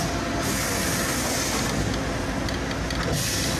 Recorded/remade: recorded